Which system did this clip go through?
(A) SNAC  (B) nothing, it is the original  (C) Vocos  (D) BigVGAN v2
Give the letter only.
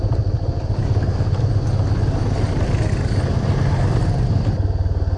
B